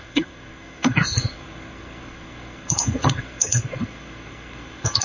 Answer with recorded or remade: remade